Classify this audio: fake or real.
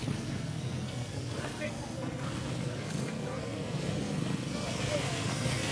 fake